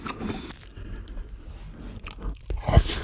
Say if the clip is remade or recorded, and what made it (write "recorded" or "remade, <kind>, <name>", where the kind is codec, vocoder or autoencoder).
recorded